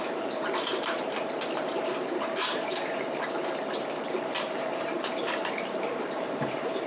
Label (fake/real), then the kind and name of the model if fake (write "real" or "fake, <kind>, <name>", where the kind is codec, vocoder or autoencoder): fake, vocoder, BigVGAN v2